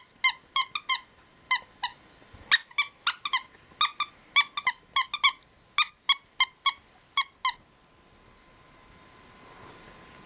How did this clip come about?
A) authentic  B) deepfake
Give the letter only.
A